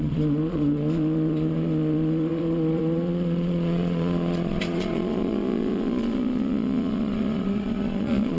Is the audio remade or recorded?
remade